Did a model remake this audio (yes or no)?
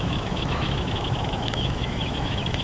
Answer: yes